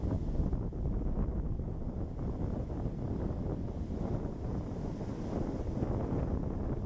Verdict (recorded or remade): recorded